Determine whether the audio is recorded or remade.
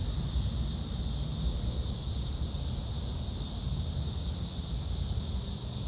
recorded